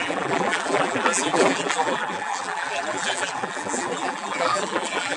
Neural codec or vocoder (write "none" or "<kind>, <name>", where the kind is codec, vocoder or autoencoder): vocoder, BigVGAN v2